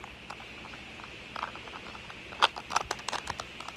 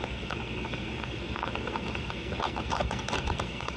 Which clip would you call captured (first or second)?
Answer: first